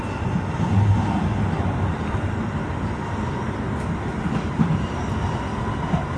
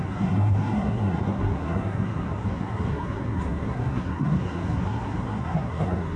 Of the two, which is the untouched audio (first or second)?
first